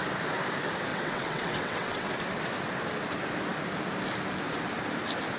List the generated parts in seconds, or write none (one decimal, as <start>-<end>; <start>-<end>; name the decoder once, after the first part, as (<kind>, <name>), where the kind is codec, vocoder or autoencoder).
0.9-2.1 (vocoder, WaveNeXt)